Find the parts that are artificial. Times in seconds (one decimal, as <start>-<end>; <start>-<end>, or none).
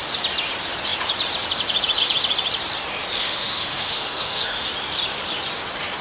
3.2-4.7